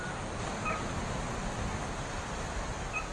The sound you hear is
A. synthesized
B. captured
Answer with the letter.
B